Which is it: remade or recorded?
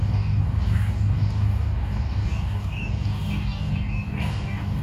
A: remade